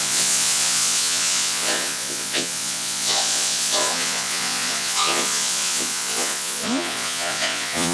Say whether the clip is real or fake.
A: fake